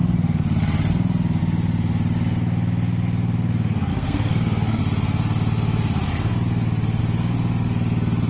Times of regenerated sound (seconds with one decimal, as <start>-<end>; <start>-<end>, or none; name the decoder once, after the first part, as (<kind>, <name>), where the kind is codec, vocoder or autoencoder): 3.9-4.8 (codec, SNAC)